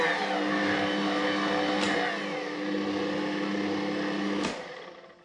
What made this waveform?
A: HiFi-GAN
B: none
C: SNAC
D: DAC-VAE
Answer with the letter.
B